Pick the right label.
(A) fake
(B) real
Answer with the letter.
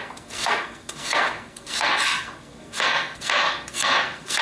A